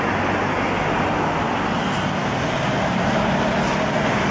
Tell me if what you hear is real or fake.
real